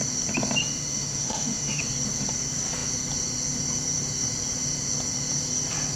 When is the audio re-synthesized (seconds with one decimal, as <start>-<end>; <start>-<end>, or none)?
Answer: 0.6-1.8